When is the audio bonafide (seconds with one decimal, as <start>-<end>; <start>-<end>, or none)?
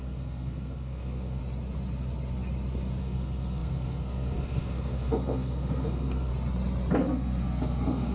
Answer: 1.4-3.0; 6.3-6.9